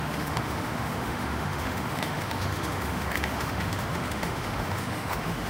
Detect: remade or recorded remade